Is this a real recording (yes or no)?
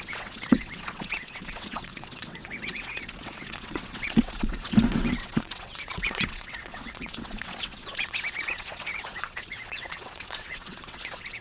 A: no